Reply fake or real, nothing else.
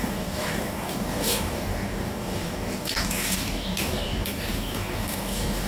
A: fake